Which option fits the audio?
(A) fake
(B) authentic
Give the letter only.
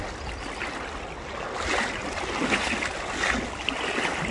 B